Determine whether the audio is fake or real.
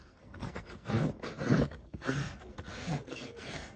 fake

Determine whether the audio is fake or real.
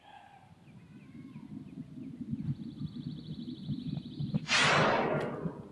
real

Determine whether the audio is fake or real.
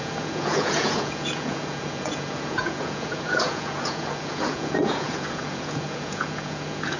fake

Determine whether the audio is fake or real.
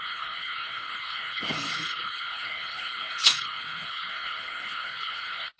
fake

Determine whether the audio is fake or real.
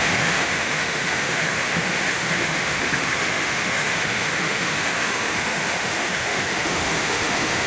fake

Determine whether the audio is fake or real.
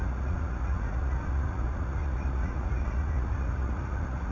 fake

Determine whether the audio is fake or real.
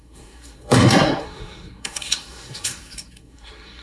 fake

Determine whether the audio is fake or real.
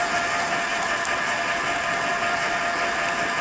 real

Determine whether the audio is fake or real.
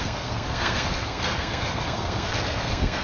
fake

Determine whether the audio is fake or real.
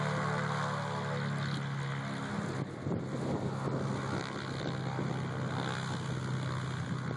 real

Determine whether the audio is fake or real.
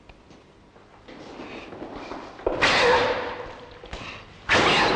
real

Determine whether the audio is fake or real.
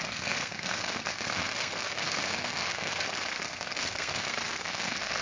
fake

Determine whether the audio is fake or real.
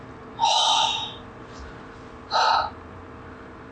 fake